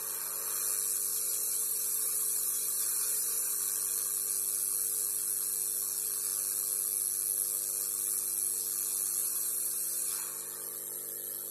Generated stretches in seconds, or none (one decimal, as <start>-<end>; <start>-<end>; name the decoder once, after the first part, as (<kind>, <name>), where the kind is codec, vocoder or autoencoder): 1.1-3.6 (vocoder, BigVGAN v2); 9.2-10.1